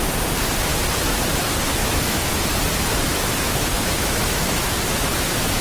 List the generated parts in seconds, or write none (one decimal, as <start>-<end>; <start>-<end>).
1.8-2.3; 3.1-5.6